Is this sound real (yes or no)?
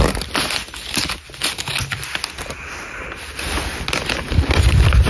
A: yes